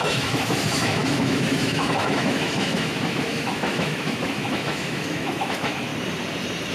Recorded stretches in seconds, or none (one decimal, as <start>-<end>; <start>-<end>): 5.9-6.7